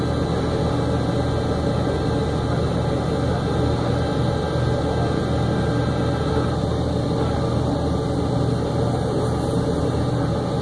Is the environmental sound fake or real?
real